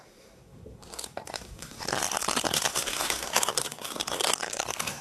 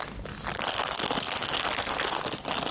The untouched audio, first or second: second